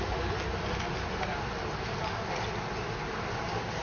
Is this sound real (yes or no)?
yes